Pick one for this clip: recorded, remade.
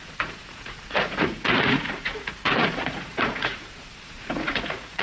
remade